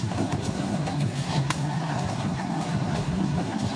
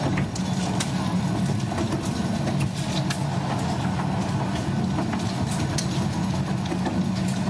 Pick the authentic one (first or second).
second